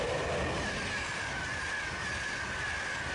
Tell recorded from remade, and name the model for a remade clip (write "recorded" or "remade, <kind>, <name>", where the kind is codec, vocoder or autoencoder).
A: recorded